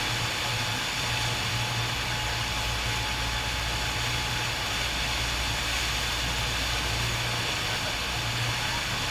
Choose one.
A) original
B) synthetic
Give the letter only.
A